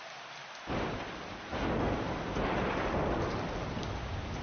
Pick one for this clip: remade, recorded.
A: recorded